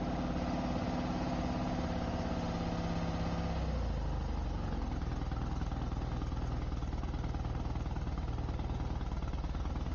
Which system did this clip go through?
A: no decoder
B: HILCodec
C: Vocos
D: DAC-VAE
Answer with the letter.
A